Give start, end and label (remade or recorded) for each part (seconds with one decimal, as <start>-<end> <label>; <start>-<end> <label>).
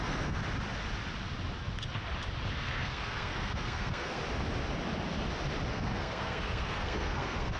0.0-0.4 remade; 0.4-2.5 recorded; 2.5-4.2 remade; 4.2-5.7 recorded; 5.7-7.6 remade